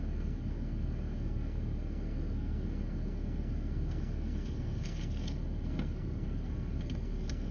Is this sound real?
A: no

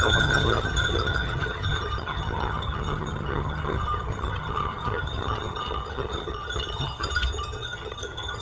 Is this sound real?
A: no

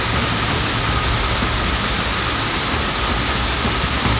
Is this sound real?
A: yes